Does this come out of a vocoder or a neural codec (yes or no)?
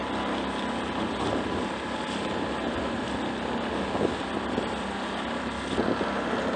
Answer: no